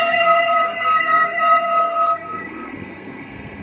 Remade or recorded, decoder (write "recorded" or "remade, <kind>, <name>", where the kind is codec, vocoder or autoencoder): remade, codec, SNAC